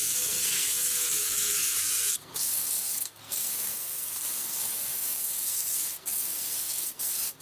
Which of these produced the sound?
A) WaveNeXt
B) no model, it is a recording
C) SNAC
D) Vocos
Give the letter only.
C